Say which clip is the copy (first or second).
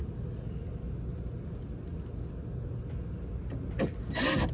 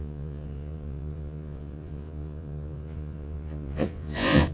second